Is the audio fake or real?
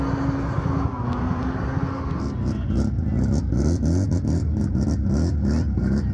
real